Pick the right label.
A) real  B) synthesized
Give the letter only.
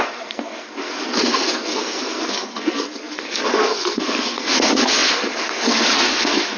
B